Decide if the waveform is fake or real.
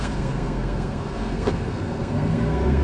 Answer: fake